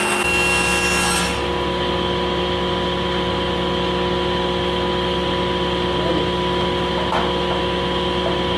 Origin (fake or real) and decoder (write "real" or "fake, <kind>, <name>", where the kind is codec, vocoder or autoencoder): real